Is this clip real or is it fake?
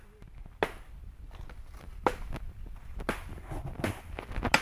real